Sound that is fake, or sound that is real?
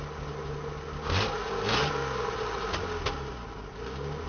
real